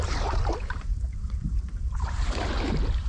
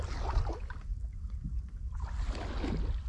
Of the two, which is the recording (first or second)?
second